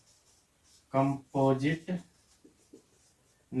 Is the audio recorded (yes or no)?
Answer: yes